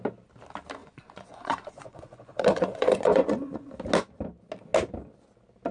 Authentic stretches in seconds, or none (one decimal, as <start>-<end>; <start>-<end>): 0.0-0.8; 3.7-5.7